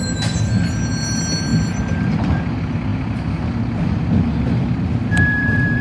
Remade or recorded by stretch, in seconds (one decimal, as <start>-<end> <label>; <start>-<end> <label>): 0.0-1.5 recorded; 1.5-2.4 remade; 2.4-5.1 recorded; 5.1-5.8 remade